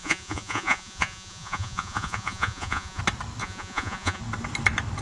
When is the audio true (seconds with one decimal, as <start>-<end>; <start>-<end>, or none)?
3.0-3.4; 4.2-5.0